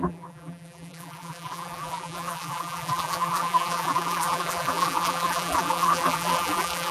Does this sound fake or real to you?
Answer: fake